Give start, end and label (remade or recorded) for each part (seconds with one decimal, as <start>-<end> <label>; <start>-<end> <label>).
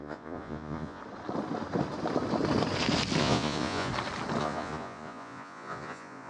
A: 0.0-1.0 remade; 1.0-3.2 recorded; 3.2-3.9 remade; 3.9-4.4 recorded; 4.4-6.3 remade